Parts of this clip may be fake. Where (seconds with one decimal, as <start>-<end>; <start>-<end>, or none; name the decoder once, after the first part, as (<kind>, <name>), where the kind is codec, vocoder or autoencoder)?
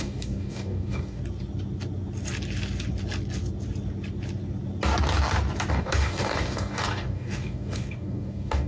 0.0-1.2 (codec, DAC); 5.7-8.7